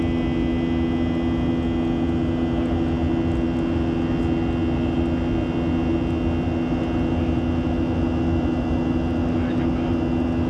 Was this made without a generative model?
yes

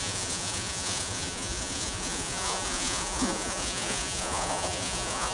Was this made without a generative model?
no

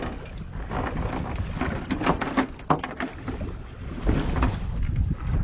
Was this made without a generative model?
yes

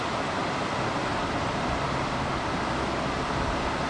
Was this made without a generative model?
yes